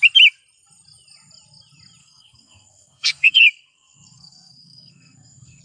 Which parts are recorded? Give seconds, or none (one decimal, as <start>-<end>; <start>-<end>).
0.0-2.0